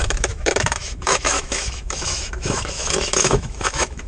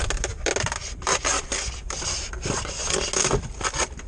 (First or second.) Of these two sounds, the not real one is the first